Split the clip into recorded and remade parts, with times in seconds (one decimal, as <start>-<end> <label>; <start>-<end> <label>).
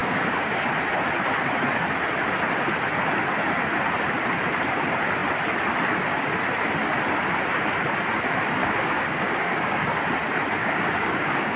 0.0-0.7 remade; 0.7-8.6 recorded; 8.6-10.0 remade; 10.0-10.6 recorded; 10.6-11.6 remade